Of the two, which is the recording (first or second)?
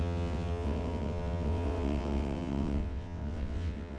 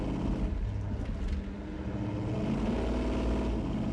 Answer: second